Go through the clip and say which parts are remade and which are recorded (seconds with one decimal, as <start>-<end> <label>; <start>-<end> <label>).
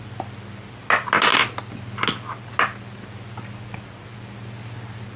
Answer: 0.0-5.2 recorded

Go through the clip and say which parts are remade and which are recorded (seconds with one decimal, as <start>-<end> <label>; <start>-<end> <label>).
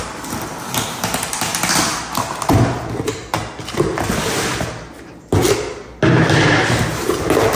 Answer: 0.0-7.6 recorded